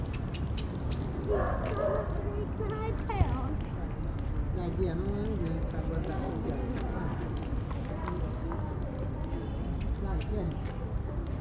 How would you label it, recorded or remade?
recorded